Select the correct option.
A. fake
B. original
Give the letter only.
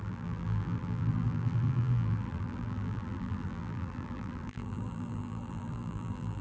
A